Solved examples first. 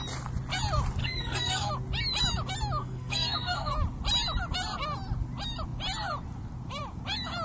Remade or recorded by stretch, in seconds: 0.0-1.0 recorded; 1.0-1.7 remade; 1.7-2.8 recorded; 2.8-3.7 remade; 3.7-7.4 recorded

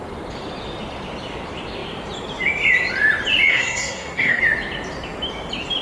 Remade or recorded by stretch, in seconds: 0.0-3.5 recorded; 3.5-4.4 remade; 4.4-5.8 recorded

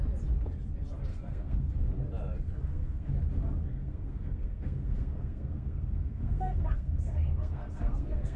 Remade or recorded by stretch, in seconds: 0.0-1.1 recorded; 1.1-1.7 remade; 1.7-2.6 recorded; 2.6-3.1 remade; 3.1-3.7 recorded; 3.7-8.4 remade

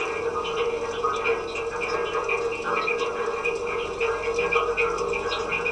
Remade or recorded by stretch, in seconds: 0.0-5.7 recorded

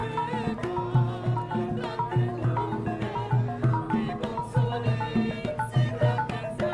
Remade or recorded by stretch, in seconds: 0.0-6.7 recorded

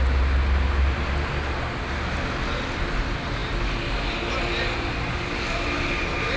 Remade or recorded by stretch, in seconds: 0.0-6.4 recorded